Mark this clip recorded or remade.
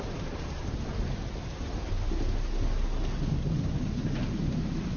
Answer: recorded